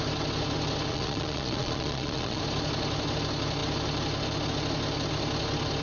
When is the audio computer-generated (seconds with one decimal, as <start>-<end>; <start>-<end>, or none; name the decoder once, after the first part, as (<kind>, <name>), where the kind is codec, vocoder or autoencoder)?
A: 0.9-2.4 (vocoder, Vocos)